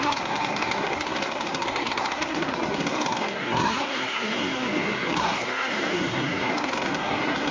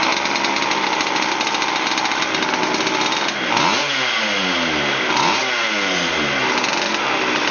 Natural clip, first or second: second